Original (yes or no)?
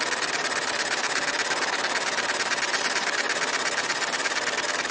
yes